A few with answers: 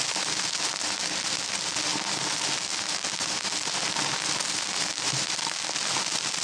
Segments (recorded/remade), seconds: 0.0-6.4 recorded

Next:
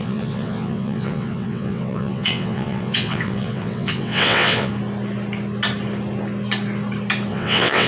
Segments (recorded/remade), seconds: 0.0-4.7 remade; 4.7-7.3 recorded; 7.3-7.9 remade